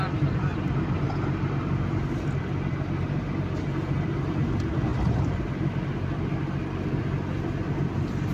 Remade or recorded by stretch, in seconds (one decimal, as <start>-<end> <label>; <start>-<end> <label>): 0.0-4.9 recorded; 4.9-5.5 remade; 5.5-8.3 recorded